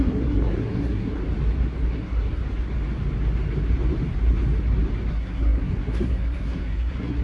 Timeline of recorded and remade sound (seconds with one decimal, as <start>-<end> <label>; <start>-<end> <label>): 0.0-1.2 remade; 1.2-1.9 recorded; 1.9-2.4 remade; 2.4-5.1 recorded; 5.1-7.2 remade